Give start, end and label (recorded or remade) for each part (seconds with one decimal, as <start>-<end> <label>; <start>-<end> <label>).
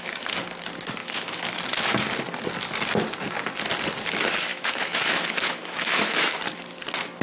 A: 0.0-1.0 recorded; 1.0-1.6 remade; 1.6-4.5 recorded; 4.5-6.4 remade; 6.4-7.2 recorded